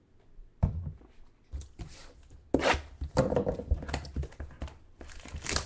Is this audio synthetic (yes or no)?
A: no